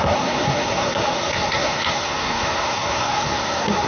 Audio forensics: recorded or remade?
remade